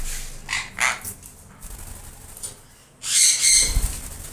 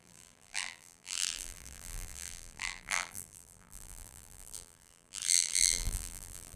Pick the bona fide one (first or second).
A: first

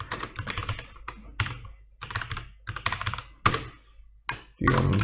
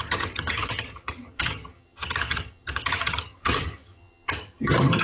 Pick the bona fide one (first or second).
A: first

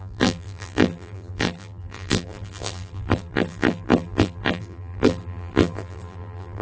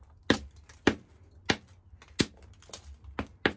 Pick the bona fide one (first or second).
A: second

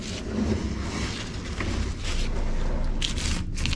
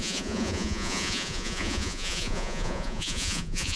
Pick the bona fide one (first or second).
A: first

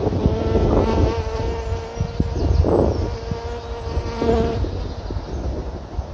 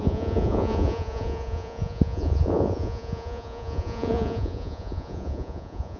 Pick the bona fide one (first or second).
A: first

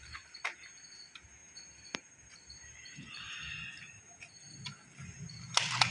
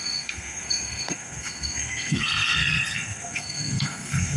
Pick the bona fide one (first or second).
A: first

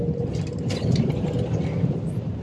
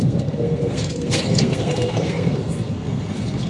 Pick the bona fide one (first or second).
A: first